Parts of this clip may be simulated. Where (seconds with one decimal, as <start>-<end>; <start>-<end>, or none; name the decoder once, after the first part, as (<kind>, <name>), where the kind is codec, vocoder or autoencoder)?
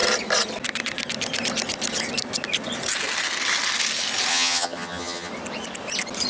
4.3-5.3 (vocoder, HiFi-GAN)